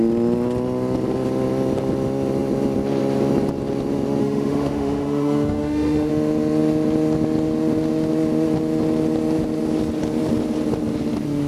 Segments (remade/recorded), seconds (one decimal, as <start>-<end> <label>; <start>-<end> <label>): 0.0-4.2 recorded; 4.2-6.1 remade; 6.1-11.5 recorded